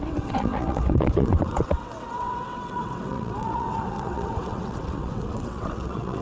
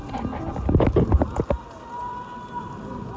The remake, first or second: first